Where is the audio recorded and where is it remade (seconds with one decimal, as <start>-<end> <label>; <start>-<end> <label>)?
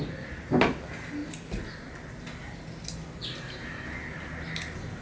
0.0-5.0 recorded